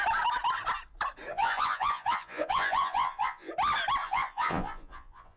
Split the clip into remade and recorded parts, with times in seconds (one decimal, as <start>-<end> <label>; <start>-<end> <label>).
0.0-1.3 recorded; 1.3-3.5 remade; 3.5-4.0 recorded; 4.0-5.4 remade